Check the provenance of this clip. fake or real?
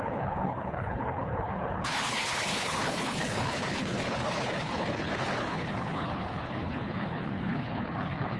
fake